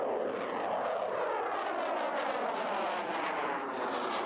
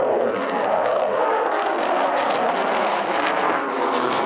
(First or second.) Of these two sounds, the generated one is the second